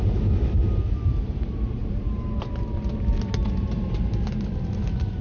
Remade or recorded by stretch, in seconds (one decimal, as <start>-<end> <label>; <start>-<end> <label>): 0.0-5.2 recorded

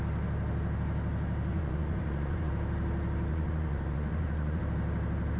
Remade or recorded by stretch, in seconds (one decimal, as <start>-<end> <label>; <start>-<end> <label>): 0.0-1.5 recorded; 1.5-2.5 remade; 2.5-3.3 recorded; 3.3-4.6 remade; 4.6-5.4 recorded

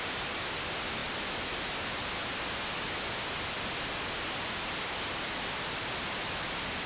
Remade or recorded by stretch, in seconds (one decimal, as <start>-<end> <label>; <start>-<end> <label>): 0.0-6.9 recorded

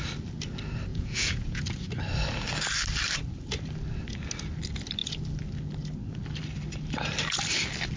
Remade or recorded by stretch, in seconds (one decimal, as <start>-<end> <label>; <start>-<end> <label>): 0.0-0.9 recorded; 0.9-1.6 remade; 1.6-8.0 recorded

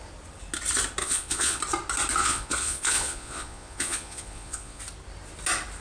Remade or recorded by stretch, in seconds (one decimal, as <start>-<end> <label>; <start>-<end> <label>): 0.0-1.0 recorded; 1.0-1.6 remade; 1.6-2.2 recorded; 2.2-4.8 remade; 4.8-5.8 recorded

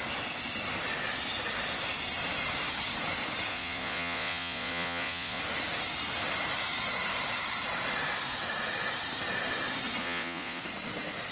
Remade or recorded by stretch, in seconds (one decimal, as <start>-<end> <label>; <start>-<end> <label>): 0.0-3.5 recorded; 3.5-5.4 remade; 5.4-10.0 recorded; 10.0-10.6 remade; 10.6-11.3 recorded

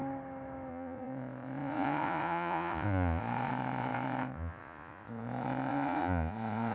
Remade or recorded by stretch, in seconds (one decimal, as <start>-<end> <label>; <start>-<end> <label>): 0.0-0.7 recorded; 0.7-6.7 remade